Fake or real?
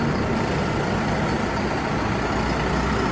real